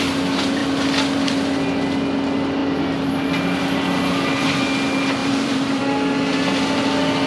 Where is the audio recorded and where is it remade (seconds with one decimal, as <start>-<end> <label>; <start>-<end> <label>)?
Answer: 0.0-5.2 recorded; 5.2-5.8 remade; 5.8-7.3 recorded